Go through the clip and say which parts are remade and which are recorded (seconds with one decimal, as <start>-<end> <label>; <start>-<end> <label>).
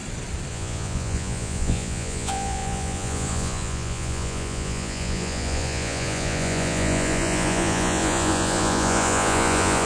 0.0-0.5 recorded; 0.5-9.9 remade